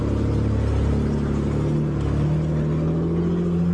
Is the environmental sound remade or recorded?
recorded